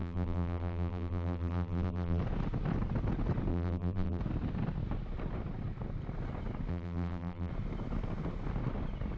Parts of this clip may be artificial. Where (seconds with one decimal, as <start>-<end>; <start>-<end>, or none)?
0.0-2.2; 3.5-4.2; 6.7-7.5